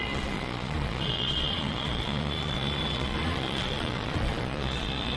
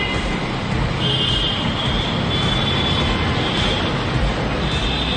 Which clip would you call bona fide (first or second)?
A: second